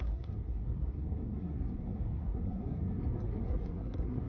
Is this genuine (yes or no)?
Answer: no